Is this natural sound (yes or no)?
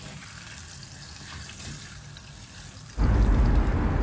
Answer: yes